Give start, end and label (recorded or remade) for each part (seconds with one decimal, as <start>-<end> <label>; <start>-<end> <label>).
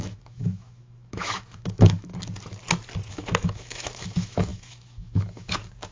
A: 0.0-2.1 remade; 2.1-3.1 recorded; 3.1-5.9 remade